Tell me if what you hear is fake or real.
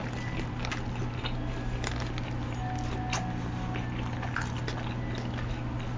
real